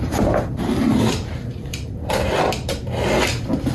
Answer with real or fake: fake